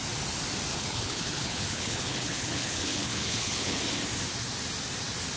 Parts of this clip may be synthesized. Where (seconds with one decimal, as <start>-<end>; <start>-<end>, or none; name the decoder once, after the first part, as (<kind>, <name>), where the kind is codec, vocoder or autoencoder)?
0.7-3.8 (codec, HILCodec)